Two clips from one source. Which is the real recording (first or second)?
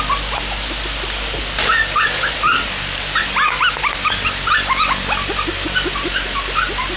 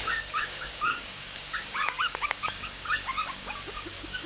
first